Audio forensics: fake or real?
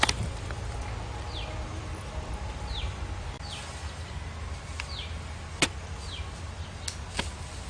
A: real